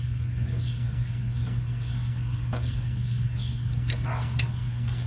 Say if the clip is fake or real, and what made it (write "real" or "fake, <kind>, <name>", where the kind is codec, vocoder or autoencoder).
fake, codec, SNAC